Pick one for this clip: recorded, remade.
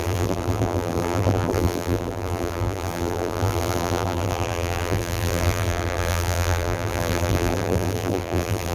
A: remade